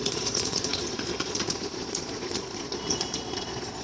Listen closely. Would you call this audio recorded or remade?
remade